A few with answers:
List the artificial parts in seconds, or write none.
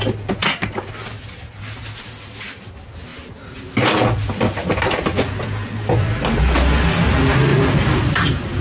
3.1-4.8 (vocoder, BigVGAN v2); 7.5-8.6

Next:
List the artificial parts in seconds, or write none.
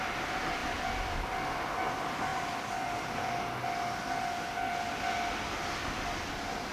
none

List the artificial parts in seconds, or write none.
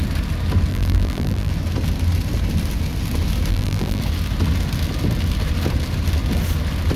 0.7-1.5 (vocoder, BigVGAN v2); 3.5-4.0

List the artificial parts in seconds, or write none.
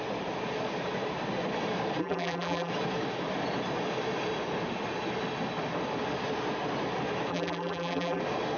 2.0-2.7 (vocoder, BigVGAN v2); 7.3-8.2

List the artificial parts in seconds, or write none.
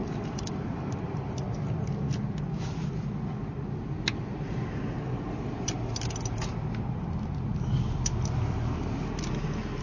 0.0-1.3 (vocoder, BigVGAN v2)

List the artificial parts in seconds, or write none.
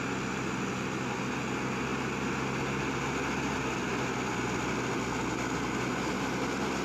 none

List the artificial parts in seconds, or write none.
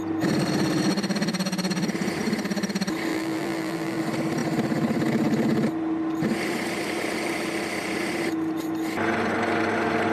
3.1-4.0 (vocoder, BigVGAN v2)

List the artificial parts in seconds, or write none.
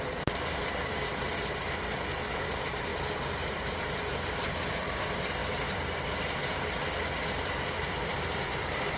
0.0-9.0 (vocoder, BigVGAN v2)